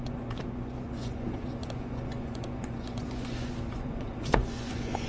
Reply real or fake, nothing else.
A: fake